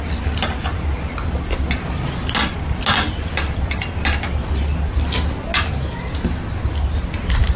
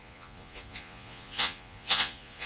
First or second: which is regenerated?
second